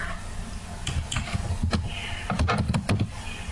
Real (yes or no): yes